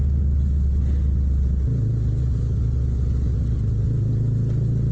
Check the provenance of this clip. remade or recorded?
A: recorded